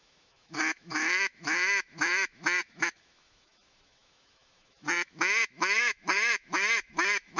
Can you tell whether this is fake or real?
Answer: fake